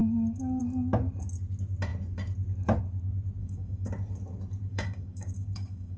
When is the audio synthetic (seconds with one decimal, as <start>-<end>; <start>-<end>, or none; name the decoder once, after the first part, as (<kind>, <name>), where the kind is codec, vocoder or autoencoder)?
0.0-0.6 (codec, DAC); 3.4-3.9; 4.7-6.0